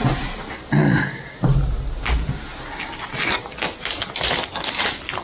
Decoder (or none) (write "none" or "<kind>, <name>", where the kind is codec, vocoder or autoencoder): none